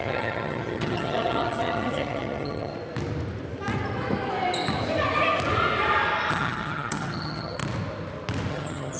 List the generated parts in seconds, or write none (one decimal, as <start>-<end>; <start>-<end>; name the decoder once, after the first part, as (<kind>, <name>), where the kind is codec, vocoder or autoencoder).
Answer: 0.0-2.7 (vocoder, HiFi-GAN); 6.3-7.6; 8.5-9.0